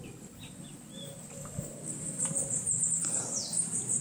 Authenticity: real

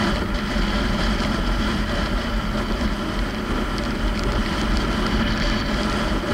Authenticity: real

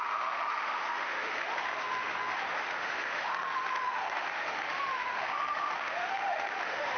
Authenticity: fake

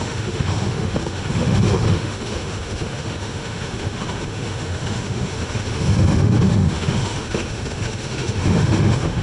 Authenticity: fake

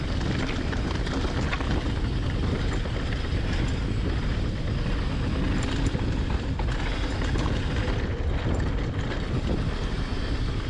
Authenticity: real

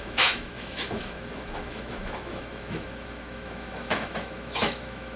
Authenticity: fake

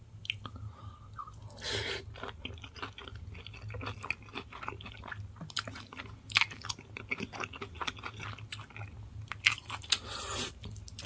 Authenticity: real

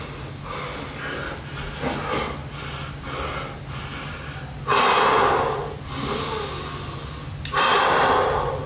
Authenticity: real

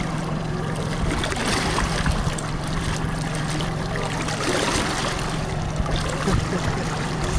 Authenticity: real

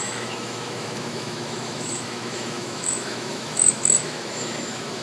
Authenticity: fake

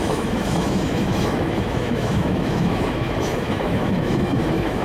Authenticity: fake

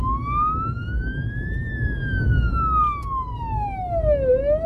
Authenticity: real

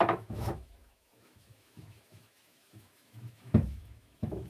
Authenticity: fake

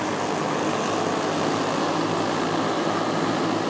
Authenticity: real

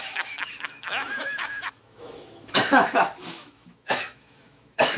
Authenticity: fake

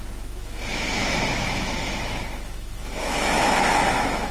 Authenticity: fake